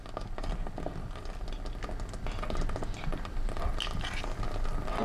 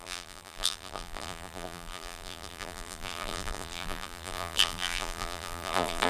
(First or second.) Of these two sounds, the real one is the first